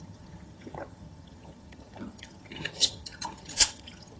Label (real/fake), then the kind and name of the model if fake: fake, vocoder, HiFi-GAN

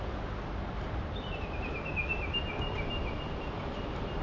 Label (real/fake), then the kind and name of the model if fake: real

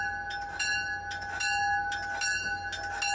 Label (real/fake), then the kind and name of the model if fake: real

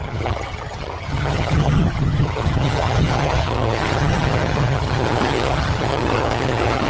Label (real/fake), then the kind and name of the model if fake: fake, vocoder, HiFi-GAN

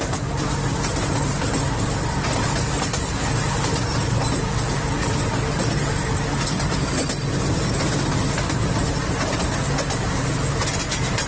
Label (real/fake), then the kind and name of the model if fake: real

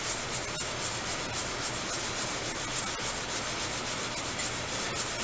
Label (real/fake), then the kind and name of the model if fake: real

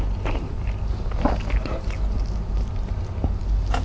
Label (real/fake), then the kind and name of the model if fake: real